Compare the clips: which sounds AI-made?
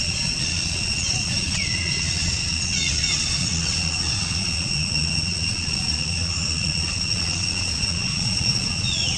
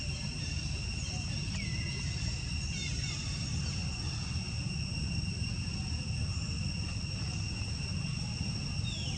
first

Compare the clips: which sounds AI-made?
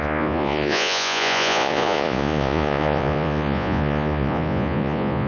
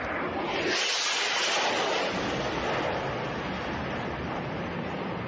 first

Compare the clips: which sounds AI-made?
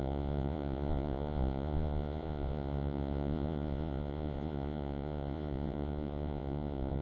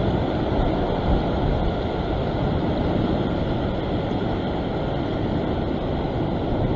first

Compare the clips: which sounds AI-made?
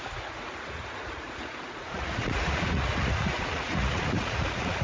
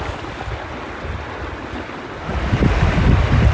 first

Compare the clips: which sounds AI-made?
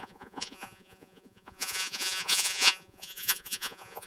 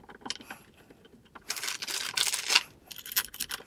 first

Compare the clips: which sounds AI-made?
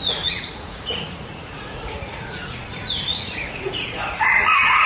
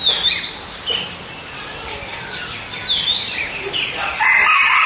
first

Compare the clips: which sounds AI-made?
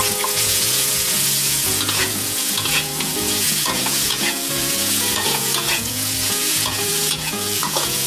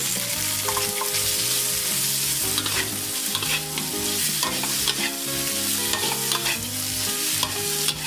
first